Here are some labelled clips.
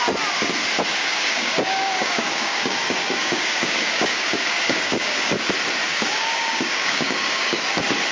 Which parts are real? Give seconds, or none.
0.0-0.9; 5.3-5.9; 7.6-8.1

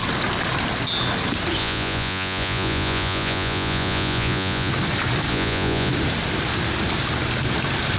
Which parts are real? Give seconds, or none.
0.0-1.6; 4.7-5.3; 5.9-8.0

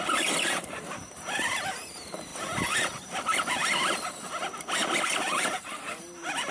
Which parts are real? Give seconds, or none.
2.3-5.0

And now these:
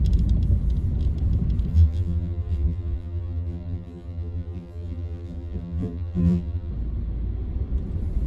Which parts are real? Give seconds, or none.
0.0-1.7; 6.7-8.3

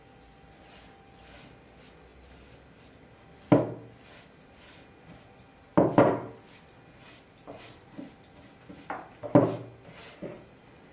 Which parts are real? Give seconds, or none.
0.0-10.9

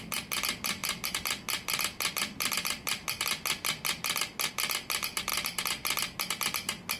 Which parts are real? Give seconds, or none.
0.0-7.0

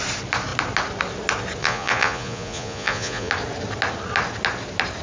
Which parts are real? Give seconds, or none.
0.0-1.6; 3.3-5.0